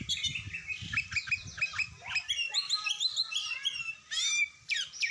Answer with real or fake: fake